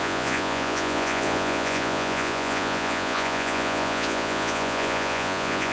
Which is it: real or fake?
fake